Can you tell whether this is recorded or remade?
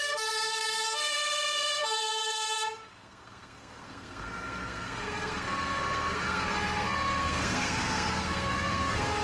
remade